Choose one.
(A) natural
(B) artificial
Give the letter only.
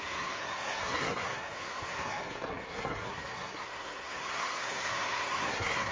B